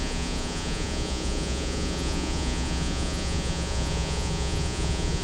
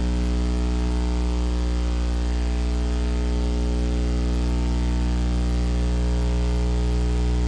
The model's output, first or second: first